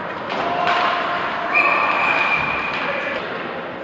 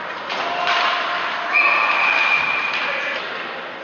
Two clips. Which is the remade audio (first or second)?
first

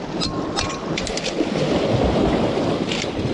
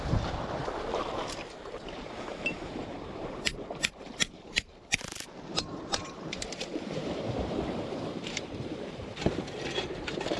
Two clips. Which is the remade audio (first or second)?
second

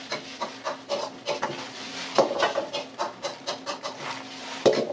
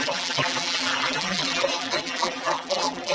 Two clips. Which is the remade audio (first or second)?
second